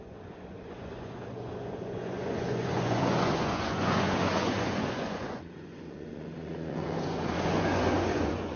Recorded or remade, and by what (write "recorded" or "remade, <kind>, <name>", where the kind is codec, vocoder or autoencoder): remade, vocoder, Vocos